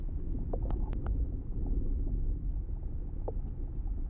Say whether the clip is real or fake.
real